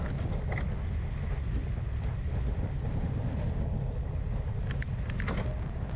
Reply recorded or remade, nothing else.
recorded